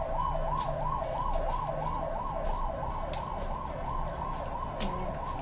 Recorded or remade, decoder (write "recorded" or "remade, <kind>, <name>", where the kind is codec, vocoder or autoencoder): recorded